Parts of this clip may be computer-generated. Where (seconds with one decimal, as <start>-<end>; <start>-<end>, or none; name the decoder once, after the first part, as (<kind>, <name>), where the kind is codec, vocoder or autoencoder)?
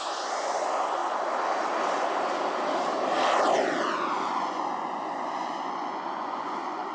0.0-1.0 (vocoder, Vocos); 4.3-6.9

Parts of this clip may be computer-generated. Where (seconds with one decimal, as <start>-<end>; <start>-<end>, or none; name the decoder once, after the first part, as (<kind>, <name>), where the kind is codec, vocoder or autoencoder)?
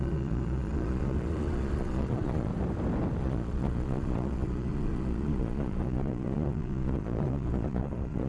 0.0-2.5 (vocoder, Vocos); 3.2-8.3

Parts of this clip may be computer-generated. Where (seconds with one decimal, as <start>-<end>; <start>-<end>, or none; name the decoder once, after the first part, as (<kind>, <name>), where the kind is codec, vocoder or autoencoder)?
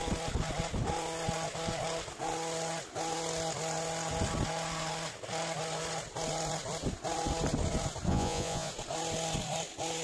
8.1-8.7 (vocoder, Vocos)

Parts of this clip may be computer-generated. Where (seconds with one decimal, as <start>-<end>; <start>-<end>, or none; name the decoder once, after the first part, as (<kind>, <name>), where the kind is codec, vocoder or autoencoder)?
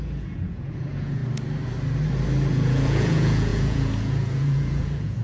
0.0-1.2 (vocoder, Vocos); 2.5-5.2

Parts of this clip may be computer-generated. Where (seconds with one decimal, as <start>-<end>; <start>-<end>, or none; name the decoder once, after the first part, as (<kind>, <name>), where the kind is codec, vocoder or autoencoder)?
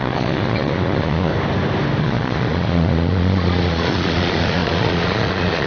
0.0-1.3 (vocoder, Vocos); 2.0-5.7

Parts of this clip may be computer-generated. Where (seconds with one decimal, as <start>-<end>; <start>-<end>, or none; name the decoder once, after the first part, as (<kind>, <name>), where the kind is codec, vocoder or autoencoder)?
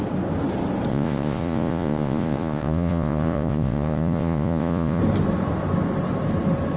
0.9-5.0 (vocoder, Vocos)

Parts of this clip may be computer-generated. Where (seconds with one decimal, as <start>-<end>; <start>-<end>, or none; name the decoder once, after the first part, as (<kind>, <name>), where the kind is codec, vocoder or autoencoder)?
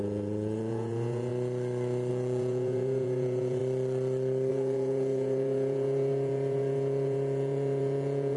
0.0-1.3 (vocoder, Vocos); 2.1-3.6; 4.5-8.4